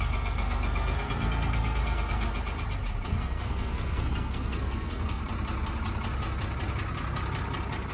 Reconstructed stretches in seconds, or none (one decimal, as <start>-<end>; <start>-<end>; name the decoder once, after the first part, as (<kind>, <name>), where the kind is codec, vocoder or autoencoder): 0.0-2.3 (codec, SNAC); 3.1-5.2